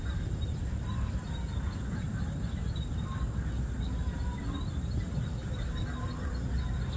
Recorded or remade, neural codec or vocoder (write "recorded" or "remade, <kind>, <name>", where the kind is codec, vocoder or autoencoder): recorded